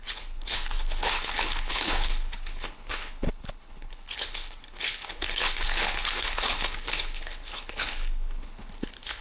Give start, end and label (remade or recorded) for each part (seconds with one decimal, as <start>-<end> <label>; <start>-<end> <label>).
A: 0.0-9.2 remade

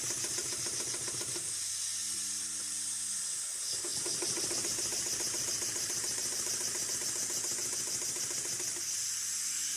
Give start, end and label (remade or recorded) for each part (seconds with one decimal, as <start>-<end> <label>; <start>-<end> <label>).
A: 0.0-0.4 recorded; 0.4-1.1 remade; 1.1-2.0 recorded; 2.0-3.4 remade; 3.4-3.9 recorded; 3.9-6.9 remade; 6.9-9.8 recorded

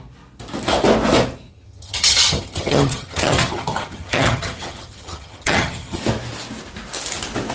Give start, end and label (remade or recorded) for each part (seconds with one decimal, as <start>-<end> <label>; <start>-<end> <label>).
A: 0.0-1.5 recorded; 1.5-6.0 remade; 6.0-7.5 recorded

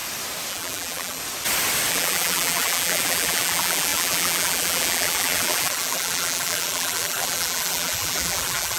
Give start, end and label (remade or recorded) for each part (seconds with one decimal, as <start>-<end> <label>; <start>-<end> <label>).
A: 0.0-0.5 recorded; 0.5-1.2 remade; 1.2-1.9 recorded; 1.9-8.8 remade

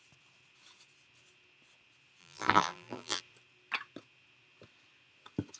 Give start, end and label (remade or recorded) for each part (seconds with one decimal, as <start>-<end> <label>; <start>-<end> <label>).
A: 0.0-2.2 recorded; 2.2-3.2 remade; 3.2-5.6 recorded

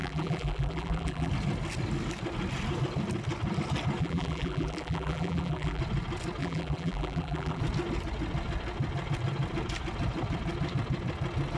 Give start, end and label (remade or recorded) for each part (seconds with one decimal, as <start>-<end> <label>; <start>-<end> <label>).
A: 0.0-1.3 remade; 1.3-4.0 recorded; 4.0-5.8 remade; 5.8-6.4 recorded; 6.4-7.6 remade; 7.6-11.6 recorded

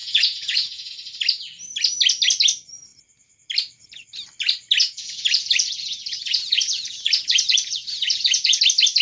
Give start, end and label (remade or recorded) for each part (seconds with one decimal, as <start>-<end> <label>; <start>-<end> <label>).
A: 0.0-0.9 remade; 0.9-4.8 recorded; 4.8-8.6 remade; 8.6-9.0 recorded